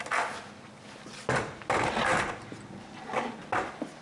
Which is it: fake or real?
real